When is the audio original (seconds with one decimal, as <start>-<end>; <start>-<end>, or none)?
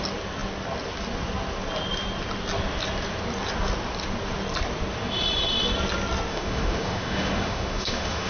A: 0.0-6.3